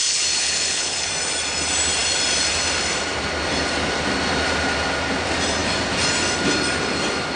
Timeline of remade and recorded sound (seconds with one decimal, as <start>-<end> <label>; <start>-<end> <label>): 0.0-1.1 remade; 1.1-7.4 recorded